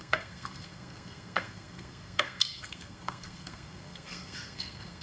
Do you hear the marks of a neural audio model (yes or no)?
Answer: yes